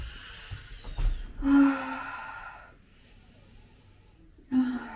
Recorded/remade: recorded